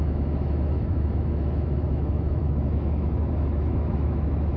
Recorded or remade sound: remade